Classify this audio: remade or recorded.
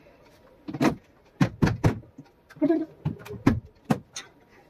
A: recorded